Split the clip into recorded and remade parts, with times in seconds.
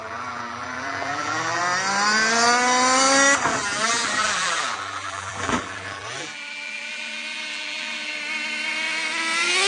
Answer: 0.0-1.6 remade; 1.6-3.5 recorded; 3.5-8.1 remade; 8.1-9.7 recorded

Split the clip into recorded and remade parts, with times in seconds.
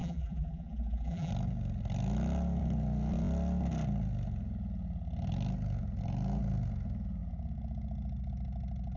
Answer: 0.0-1.3 remade; 1.3-9.0 recorded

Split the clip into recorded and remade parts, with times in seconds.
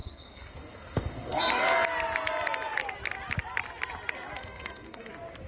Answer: 0.0-1.4 remade; 1.4-4.4 recorded; 4.4-5.1 remade; 5.1-5.5 recorded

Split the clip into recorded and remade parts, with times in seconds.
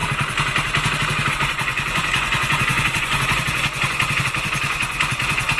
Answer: 0.0-1.3 recorded; 1.3-5.6 remade